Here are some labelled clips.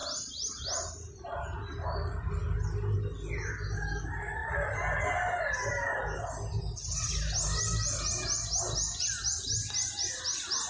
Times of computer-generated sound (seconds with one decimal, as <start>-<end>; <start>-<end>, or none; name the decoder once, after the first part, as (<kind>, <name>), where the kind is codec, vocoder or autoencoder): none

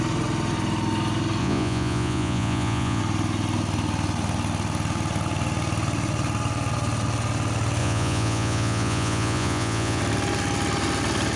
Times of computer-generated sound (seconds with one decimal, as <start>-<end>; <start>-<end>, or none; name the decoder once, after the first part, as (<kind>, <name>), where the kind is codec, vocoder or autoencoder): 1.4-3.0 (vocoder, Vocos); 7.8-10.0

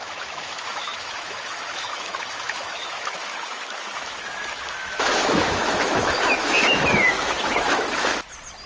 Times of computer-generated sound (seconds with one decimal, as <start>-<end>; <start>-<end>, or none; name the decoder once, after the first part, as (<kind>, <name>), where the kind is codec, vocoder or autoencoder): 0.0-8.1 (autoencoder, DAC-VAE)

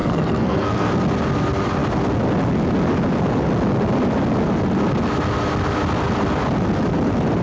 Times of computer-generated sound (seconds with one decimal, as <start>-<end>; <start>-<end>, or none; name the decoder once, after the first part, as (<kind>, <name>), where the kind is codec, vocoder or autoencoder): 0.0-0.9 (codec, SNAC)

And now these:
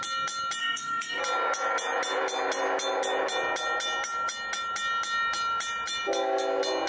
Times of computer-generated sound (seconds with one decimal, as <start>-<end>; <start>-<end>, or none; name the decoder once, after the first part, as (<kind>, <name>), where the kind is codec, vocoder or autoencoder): 0.6-1.2 (codec, SNAC)